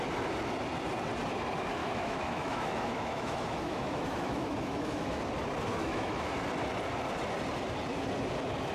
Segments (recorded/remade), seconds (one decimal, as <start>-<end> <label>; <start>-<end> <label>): 0.0-1.8 recorded; 1.8-5.2 remade; 5.2-5.7 recorded; 5.7-6.3 remade; 6.3-8.7 recorded